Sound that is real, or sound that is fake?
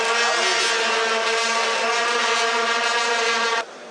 real